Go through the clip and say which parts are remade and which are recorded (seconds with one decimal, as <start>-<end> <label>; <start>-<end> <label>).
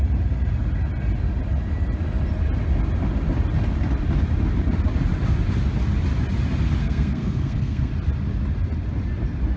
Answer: 0.0-6.8 recorded; 6.8-7.9 remade; 7.9-9.6 recorded